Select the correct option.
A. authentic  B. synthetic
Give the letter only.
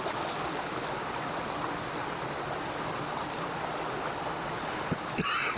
A